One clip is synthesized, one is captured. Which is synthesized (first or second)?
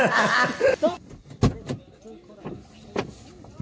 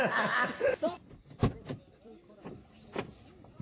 second